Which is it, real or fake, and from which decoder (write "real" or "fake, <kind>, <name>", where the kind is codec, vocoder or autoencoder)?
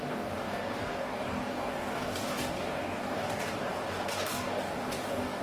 fake, codec, DAC